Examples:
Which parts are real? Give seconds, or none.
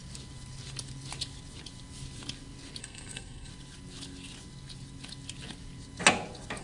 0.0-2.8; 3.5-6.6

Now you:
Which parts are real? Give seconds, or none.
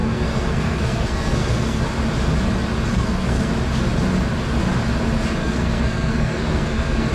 1.8-2.9; 3.5-5.4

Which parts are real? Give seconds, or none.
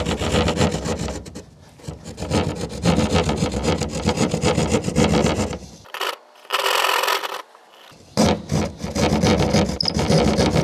0.0-10.6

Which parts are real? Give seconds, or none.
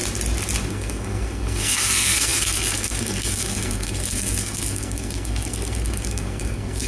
0.0-0.7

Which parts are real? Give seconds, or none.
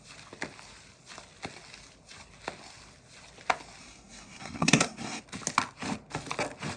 0.0-3.8; 5.2-6.8